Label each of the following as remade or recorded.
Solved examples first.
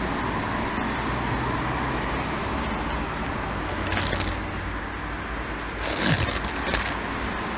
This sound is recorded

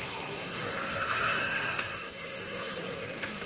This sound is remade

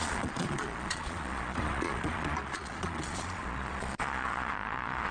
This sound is remade